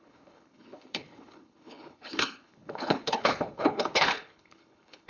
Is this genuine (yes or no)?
no